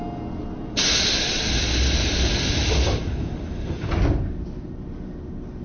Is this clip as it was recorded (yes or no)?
yes